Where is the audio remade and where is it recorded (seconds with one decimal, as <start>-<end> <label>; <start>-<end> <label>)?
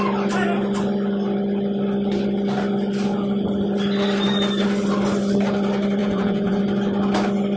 0.0-6.0 recorded; 6.0-6.6 remade; 6.6-7.6 recorded